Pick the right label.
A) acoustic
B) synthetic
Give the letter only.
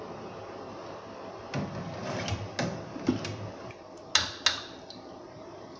A